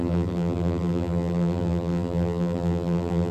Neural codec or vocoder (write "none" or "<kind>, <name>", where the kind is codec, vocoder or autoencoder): vocoder, BigVGAN v2